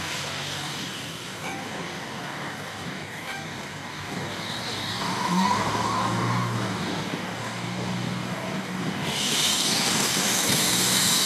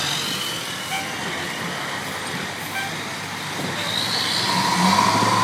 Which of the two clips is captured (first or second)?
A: second